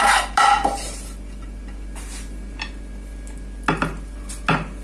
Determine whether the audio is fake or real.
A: real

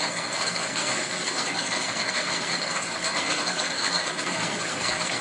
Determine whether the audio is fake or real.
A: fake